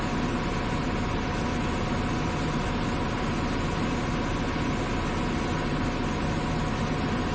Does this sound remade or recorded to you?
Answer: recorded